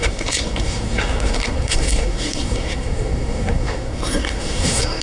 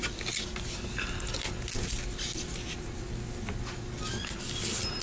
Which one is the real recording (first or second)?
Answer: second